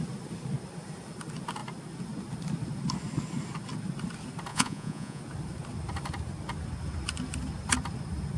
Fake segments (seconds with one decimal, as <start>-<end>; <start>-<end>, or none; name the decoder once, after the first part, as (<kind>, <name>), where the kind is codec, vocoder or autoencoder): 4.5-5.2 (vocoder, Vocos)